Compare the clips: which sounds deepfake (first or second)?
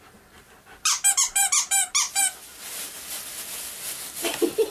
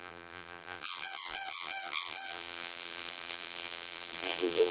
second